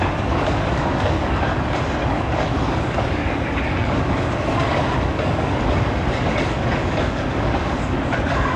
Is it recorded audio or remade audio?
remade